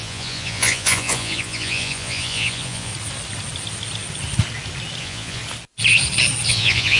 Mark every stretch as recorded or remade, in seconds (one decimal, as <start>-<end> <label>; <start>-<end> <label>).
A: 0.0-2.9 remade; 2.9-5.0 recorded; 5.0-5.4 remade; 5.4-6.5 recorded; 6.5-7.0 remade